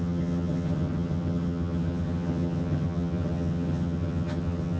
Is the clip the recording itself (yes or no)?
no